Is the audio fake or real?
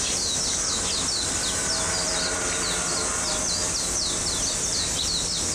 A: real